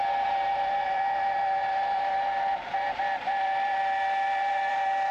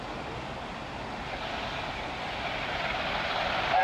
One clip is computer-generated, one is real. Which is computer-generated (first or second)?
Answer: first